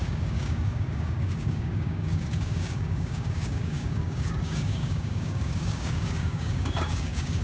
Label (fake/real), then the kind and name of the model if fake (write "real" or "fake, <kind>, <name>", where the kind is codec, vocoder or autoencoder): fake, codec, DAC